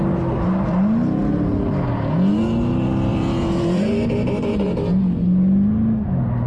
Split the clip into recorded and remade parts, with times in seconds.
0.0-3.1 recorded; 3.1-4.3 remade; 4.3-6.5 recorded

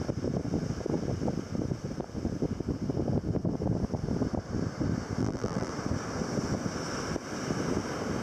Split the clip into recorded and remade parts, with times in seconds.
0.0-5.2 recorded; 5.2-5.7 remade; 5.7-8.2 recorded

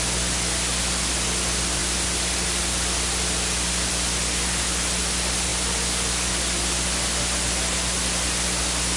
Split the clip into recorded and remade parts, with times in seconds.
0.0-1.8 recorded; 1.8-3.9 remade; 3.9-5.5 recorded; 5.5-6.3 remade; 6.3-9.0 recorded

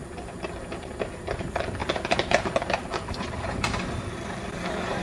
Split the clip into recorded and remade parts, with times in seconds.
0.0-5.0 remade

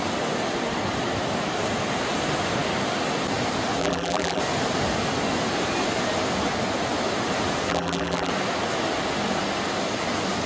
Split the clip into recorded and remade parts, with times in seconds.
0.0-3.8 recorded; 3.8-4.4 remade; 4.4-7.7 recorded; 7.7-8.3 remade; 8.3-10.5 recorded

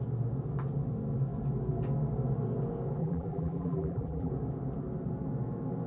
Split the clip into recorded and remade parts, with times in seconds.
0.0-3.0 recorded; 3.0-4.3 remade; 4.3-5.9 recorded